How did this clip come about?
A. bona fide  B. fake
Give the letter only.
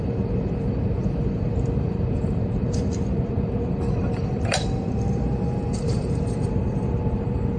B